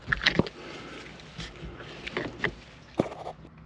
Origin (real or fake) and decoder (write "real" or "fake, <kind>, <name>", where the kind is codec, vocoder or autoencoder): real